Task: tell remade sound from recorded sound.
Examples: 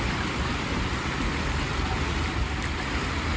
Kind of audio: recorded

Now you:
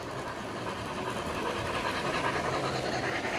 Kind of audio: recorded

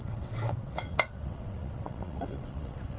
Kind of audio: remade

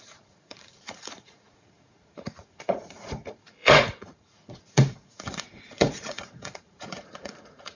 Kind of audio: remade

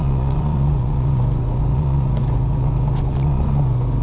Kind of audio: remade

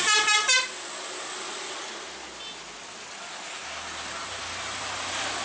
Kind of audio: recorded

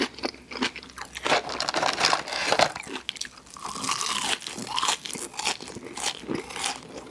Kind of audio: recorded